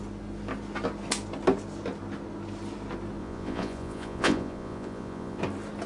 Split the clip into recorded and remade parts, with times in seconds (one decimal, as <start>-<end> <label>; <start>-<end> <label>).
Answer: 0.0-3.2 recorded; 3.2-5.4 remade; 5.4-5.9 recorded